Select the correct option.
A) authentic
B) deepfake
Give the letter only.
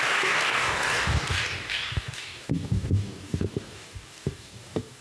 B